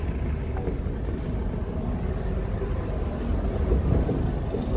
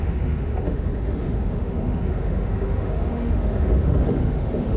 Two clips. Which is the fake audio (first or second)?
second